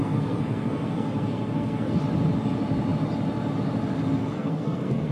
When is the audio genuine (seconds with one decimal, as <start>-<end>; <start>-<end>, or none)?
2.0-4.2